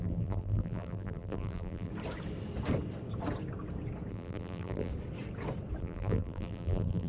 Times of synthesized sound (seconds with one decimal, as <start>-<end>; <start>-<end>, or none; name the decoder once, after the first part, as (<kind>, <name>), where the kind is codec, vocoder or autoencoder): 0.0-1.9 (vocoder, BigVGAN v2); 4.1-4.9; 5.8-7.1